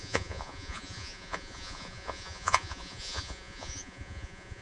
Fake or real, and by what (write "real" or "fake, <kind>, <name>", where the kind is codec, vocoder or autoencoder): fake, vocoder, Vocos